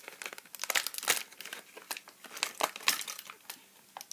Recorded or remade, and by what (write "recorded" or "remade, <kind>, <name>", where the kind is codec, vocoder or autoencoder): recorded